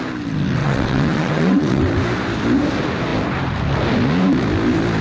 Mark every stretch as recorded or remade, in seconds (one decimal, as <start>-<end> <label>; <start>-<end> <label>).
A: 0.0-0.6 recorded; 0.6-1.8 remade; 1.8-5.0 recorded